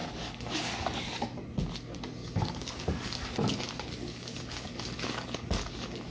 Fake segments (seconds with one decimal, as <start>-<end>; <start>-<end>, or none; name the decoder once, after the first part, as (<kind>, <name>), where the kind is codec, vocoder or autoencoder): 0.0-1.2 (codec, DAC); 2.2-6.1